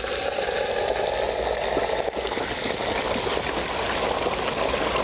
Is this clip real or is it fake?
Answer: real